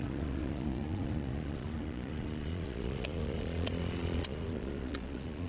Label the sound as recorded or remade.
remade